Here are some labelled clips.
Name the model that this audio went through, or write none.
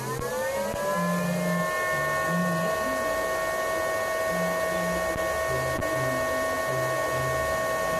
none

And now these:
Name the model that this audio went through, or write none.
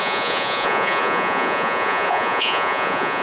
vocoder, Vocos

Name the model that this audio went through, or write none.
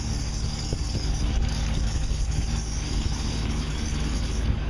codec, DAC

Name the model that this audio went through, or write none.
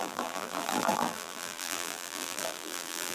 vocoder, BigVGAN v2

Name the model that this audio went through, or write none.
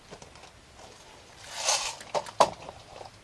none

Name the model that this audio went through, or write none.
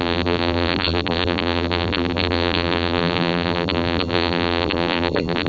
vocoder, BigVGAN v2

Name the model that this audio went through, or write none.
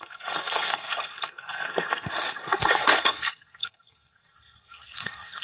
codec, SNAC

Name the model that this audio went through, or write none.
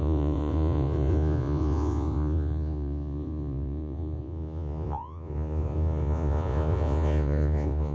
vocoder, Vocos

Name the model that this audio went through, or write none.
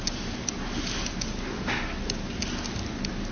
none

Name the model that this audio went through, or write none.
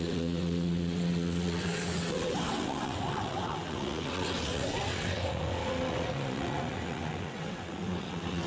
vocoder, WaveNeXt